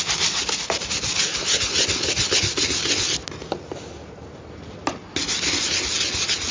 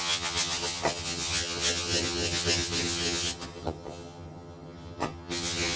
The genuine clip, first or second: first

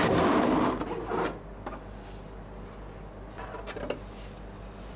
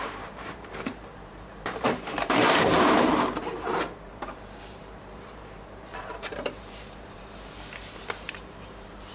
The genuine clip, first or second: first